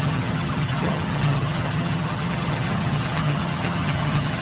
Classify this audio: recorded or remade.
remade